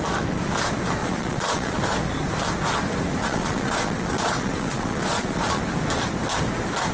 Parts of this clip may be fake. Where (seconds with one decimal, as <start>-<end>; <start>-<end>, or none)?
1.0-1.8; 3.2-5.6